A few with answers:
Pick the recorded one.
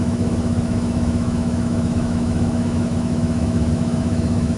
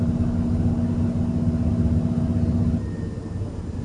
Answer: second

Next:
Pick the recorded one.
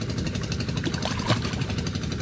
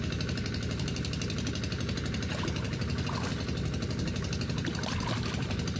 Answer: second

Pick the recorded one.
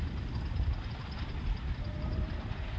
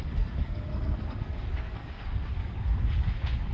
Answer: first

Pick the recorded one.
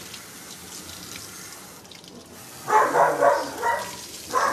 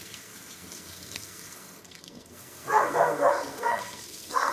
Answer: first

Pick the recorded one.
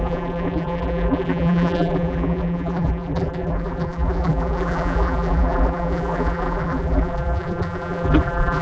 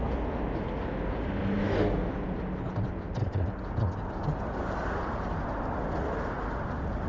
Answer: second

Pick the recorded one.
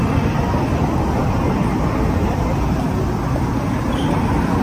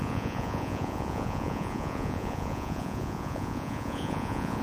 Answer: first